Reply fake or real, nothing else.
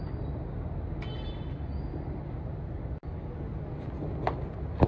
real